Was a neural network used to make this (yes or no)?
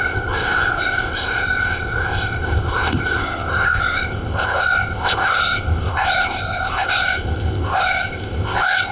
yes